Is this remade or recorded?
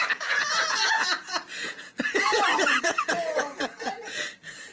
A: remade